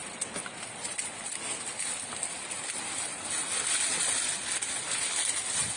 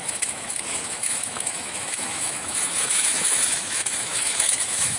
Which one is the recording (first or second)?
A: first